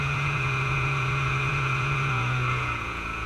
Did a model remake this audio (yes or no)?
yes